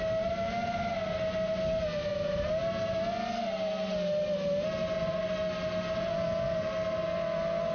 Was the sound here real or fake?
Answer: real